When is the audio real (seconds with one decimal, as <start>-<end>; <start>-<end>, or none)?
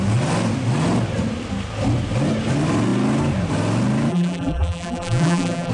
0.0-4.1